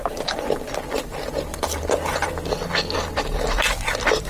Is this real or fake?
real